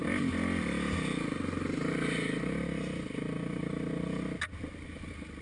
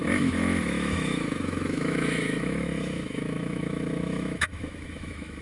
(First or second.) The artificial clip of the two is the second